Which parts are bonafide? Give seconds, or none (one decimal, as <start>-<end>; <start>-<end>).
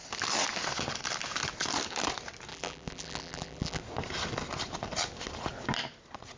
0.0-2.5; 3.8-6.4